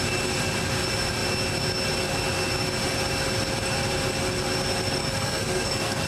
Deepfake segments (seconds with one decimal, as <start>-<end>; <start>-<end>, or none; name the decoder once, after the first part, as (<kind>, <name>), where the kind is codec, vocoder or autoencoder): 5.0-6.1 (codec, SNAC)